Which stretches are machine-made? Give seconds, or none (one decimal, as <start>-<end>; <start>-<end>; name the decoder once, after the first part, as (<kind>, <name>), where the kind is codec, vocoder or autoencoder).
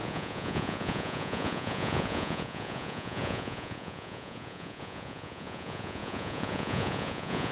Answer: 0.0-7.5 (vocoder, Vocos)